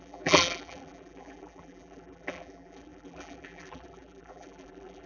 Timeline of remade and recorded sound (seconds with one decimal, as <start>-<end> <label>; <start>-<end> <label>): 0.0-5.1 remade